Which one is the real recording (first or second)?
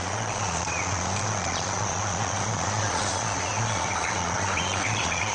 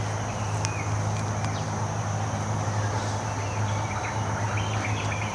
second